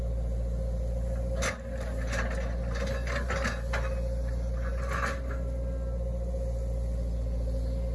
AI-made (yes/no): no